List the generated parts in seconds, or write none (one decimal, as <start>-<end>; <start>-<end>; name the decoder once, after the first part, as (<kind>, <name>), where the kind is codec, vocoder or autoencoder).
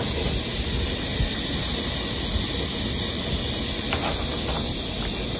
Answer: none